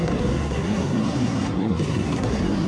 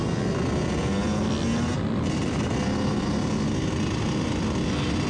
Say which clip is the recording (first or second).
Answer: second